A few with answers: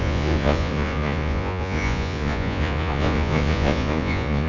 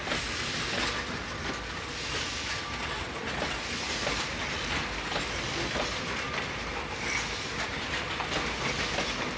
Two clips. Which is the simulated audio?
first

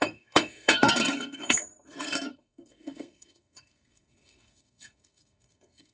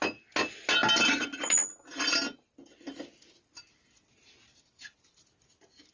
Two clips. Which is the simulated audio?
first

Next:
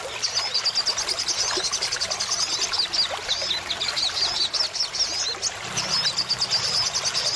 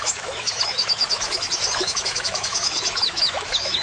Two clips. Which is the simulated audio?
second